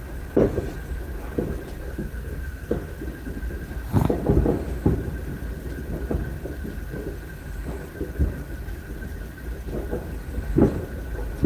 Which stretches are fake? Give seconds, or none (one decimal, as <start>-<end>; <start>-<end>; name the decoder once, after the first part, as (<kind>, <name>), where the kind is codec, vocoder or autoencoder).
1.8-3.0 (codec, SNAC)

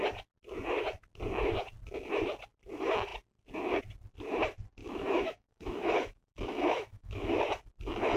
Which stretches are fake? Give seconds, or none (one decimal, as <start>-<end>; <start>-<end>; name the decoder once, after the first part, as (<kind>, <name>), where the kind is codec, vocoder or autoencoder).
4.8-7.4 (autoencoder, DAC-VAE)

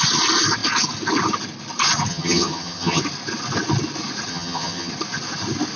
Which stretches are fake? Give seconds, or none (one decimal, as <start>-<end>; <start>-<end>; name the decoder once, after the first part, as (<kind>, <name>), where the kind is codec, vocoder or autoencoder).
2.1-3.0 (vocoder, HiFi-GAN); 4.3-4.9